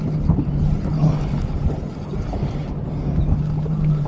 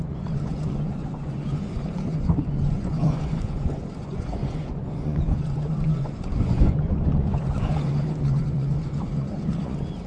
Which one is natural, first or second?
first